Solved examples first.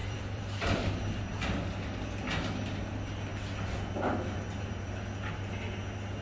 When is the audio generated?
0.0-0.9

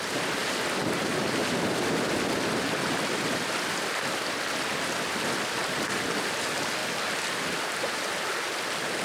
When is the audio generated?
0.4-1.2; 6.8-7.3

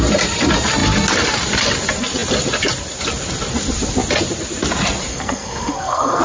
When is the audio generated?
5.1-6.2

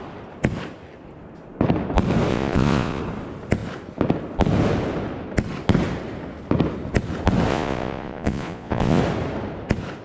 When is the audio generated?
2.3-3.0; 7.5-9.0